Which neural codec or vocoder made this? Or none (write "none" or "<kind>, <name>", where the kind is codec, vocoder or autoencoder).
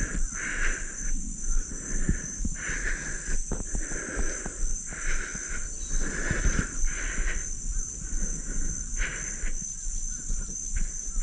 vocoder, BigVGAN v2